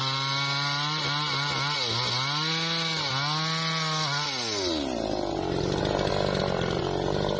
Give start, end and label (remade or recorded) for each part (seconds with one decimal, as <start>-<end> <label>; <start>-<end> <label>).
0.0-7.4 recorded